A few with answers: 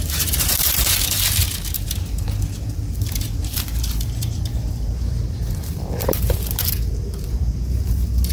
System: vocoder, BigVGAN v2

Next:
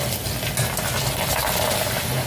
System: none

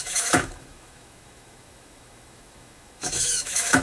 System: autoencoder, DAC-VAE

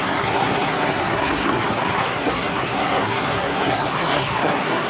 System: codec, SNAC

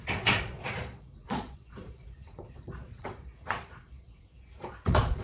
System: vocoder, Vocos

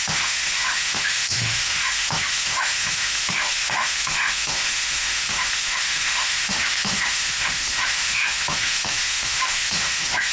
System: autoencoder, DAC-VAE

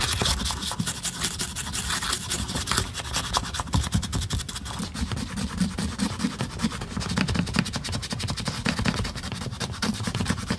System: vocoder, BigVGAN v2